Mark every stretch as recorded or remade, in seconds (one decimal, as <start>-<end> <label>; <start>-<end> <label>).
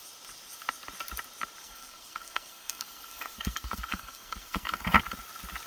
0.0-1.6 recorded; 1.6-5.0 remade; 5.0-5.7 recorded